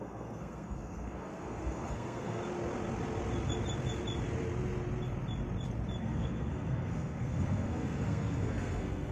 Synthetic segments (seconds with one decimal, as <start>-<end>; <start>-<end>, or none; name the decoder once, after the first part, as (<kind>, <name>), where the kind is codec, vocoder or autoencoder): 0.0-2.4 (codec, SNAC); 6.0-9.1